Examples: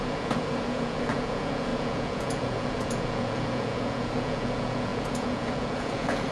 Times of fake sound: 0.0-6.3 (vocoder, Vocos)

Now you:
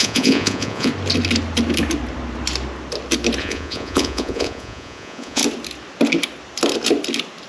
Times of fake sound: 0.0-0.9 (vocoder, Vocos); 3.4-5.4

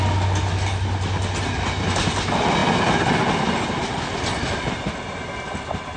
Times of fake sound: none

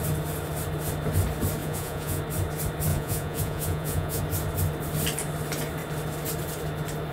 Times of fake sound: 1.6-2.2 (vocoder, Vocos); 2.9-4.2

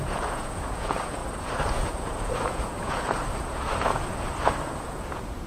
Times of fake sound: 0.0-5.5 (vocoder, Vocos)